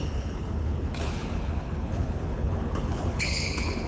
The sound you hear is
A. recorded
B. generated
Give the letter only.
B